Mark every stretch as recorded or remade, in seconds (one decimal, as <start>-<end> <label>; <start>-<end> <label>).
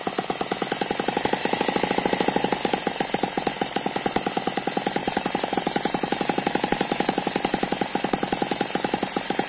0.0-5.0 recorded; 5.0-6.9 remade; 6.9-9.5 recorded